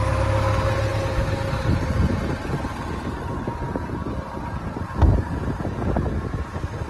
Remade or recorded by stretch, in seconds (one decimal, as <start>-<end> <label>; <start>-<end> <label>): 0.0-0.9 recorded; 0.9-2.5 remade; 2.5-6.9 recorded